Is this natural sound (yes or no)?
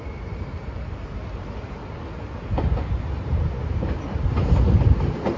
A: yes